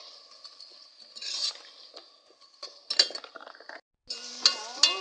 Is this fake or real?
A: real